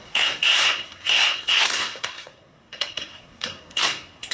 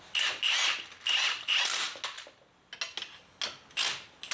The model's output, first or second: first